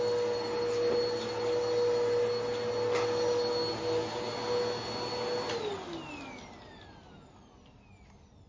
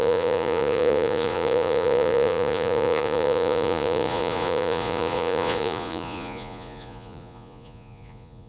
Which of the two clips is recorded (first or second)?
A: first